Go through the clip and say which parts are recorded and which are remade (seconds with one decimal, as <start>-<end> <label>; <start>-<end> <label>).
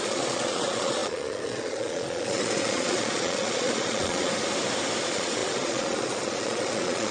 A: 0.0-4.3 remade; 4.3-5.0 recorded; 5.0-7.1 remade